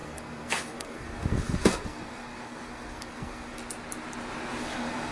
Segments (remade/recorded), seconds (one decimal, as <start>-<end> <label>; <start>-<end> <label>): 0.0-3.6 remade; 3.6-4.6 recorded; 4.6-5.1 remade